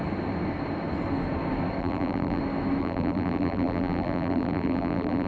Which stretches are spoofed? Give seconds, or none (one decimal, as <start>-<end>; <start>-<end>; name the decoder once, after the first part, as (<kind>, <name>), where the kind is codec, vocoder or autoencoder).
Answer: 1.8-2.4 (vocoder, BigVGAN v2); 2.8-5.3